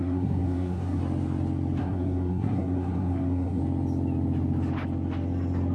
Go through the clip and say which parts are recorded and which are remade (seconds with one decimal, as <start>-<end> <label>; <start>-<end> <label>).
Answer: 0.0-1.0 remade; 1.0-1.8 recorded; 1.8-3.6 remade; 3.6-5.7 recorded